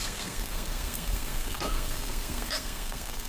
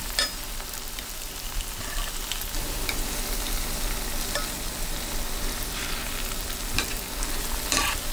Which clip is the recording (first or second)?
second